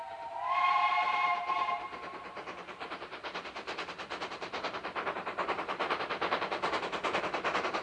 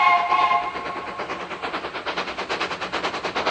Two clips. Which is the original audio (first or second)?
second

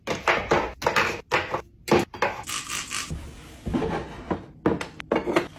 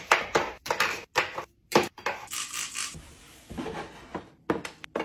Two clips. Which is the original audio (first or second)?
first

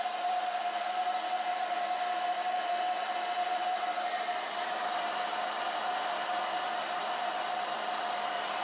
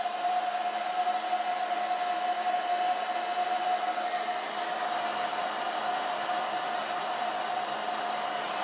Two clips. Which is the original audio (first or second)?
second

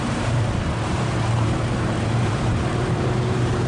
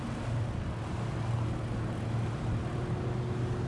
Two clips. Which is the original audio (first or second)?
second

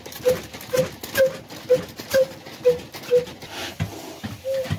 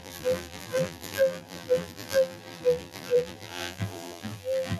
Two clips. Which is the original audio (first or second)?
first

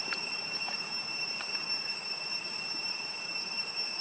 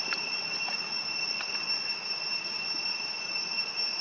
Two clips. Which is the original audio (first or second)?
second